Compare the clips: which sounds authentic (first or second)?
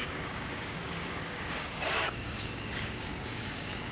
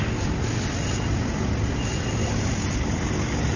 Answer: second